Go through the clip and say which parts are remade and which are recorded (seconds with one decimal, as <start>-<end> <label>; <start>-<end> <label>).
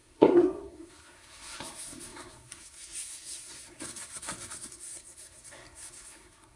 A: 0.0-6.6 remade